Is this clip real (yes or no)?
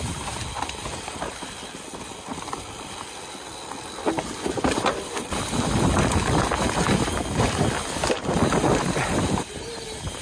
yes